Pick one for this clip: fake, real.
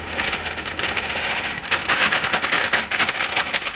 fake